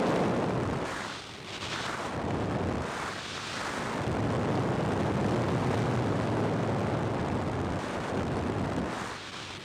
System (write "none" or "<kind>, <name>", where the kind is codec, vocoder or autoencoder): none